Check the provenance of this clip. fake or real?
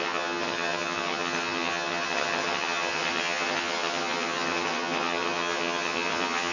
fake